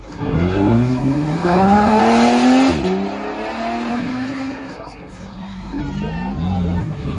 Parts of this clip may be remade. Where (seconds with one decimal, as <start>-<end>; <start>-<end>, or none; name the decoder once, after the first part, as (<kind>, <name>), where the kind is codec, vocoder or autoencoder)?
0.0-2.0 (codec, SNAC); 3.9-5.8; 6.8-7.2